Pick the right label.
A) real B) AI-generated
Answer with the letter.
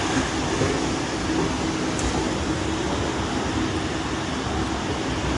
A